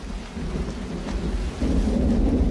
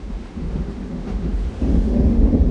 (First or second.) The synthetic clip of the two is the second